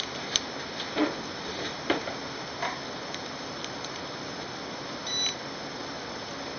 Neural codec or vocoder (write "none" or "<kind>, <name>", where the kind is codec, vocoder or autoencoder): none